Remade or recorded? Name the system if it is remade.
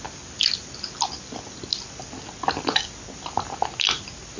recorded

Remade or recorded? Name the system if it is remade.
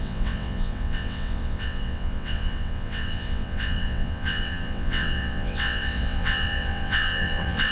remade, vocoder, WaveNeXt